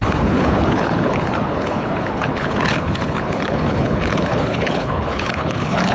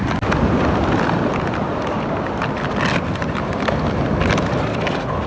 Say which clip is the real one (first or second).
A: second